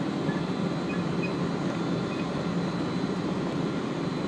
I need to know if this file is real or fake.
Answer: real